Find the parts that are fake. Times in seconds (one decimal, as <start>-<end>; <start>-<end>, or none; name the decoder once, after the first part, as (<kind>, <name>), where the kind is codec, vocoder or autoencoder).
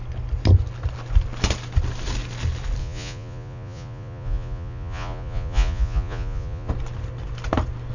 2.8-6.7 (vocoder, Vocos)